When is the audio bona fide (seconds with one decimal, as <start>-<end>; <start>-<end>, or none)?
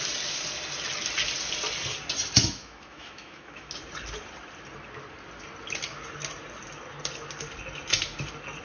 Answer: 0.0-2.4; 3.7-8.6